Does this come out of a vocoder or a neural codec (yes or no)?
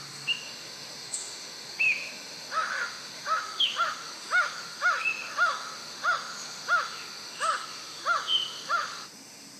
yes